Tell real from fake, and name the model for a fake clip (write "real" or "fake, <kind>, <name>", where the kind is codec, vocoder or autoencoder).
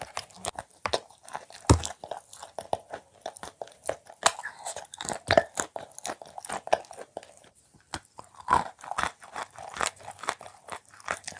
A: real